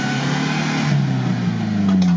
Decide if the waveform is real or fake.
real